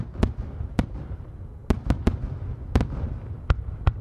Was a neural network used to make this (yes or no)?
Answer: no